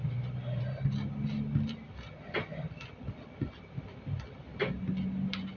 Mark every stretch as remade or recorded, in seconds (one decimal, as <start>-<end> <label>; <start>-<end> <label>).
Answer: 0.0-5.6 recorded